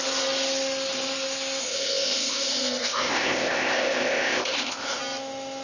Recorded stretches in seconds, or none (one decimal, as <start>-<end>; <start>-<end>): 0.0-1.6; 5.0-5.6